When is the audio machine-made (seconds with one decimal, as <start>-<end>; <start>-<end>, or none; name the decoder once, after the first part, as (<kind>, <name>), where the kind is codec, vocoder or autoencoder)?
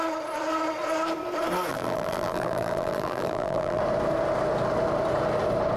1.7-3.8 (vocoder, BigVGAN v2)